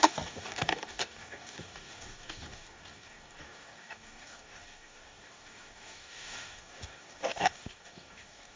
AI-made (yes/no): yes